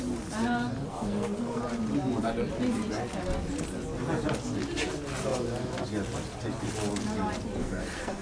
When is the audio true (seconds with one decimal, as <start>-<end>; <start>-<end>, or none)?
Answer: 0.0-0.9; 1.6-7.6